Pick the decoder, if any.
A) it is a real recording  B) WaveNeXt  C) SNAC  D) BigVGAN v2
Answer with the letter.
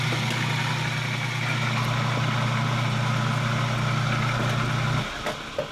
A